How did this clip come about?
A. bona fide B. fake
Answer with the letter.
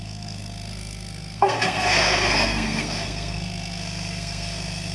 B